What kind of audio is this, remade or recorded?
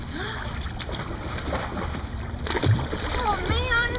remade